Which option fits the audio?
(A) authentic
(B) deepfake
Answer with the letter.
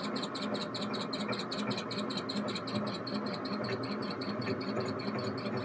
A